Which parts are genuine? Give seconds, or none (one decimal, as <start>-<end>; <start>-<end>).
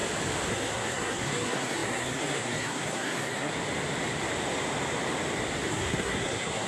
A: 0.0-0.5; 3.5-5.7